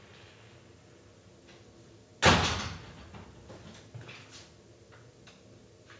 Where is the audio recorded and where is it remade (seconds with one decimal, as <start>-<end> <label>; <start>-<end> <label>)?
0.0-6.0 recorded